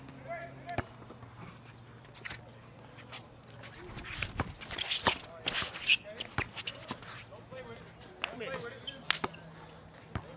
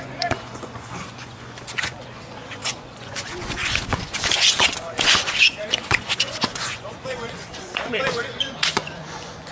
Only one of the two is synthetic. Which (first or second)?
second